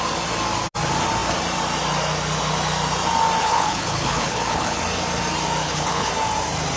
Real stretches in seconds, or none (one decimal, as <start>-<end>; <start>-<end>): 0.0-3.4; 4.8-5.6; 6.1-6.8